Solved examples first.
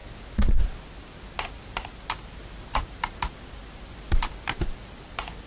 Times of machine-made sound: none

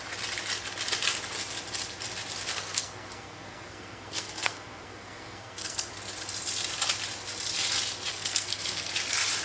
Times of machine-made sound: 2.5-5.9 (codec, SNAC); 8.1-8.9